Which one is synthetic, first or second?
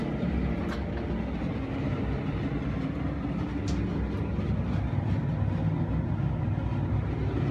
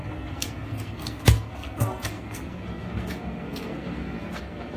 second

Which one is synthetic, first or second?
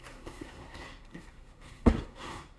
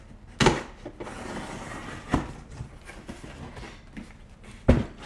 first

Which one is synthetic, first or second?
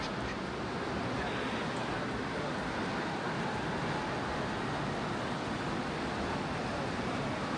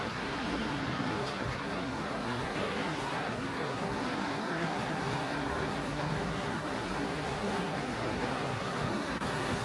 second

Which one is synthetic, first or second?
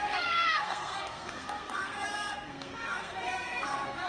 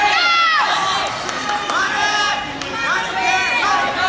first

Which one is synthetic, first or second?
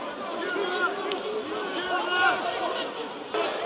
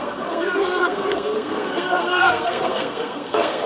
second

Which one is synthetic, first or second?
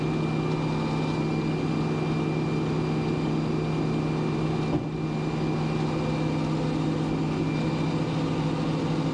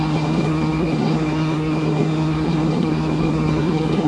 second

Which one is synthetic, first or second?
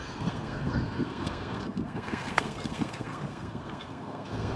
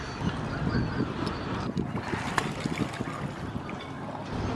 first